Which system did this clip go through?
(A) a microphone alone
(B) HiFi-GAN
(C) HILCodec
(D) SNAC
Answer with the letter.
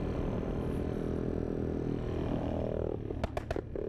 A